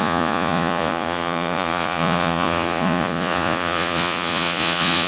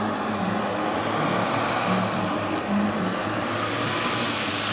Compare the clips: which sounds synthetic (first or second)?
first